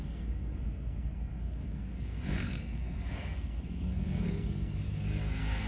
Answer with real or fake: fake